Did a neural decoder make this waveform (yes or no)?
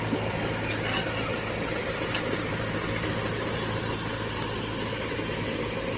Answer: no